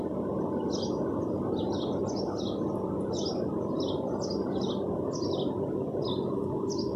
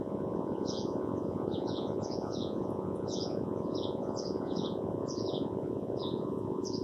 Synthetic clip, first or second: second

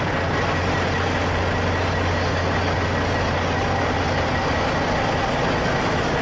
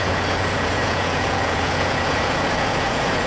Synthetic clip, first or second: second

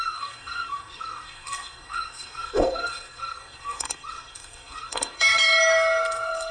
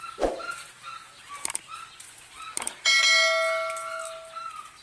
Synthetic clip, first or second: first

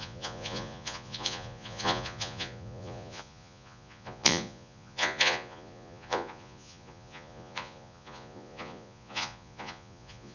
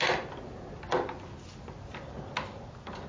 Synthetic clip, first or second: first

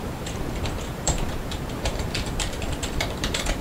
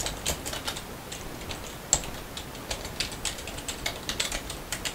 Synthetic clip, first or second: first